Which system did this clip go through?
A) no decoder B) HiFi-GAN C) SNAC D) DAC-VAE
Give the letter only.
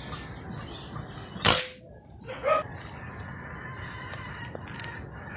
A